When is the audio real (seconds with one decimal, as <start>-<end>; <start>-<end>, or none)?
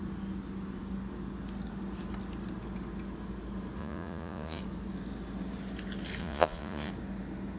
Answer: 0.0-3.8; 4.6-6.2; 6.9-7.6